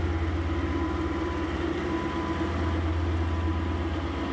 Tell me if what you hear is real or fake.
real